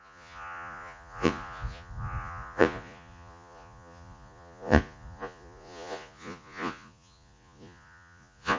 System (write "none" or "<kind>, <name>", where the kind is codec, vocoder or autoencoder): vocoder, Vocos